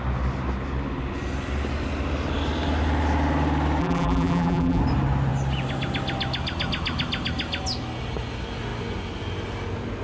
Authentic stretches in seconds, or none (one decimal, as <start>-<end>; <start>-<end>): 0.0-3.8; 4.8-10.0